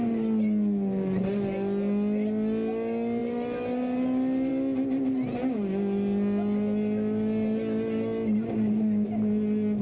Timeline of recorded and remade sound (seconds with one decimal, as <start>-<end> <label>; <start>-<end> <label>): 0.0-9.8 recorded